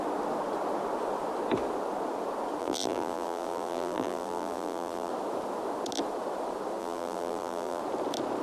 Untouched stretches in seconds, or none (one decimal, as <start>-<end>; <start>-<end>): 0.0-2.6; 5.1-6.8; 7.8-8.4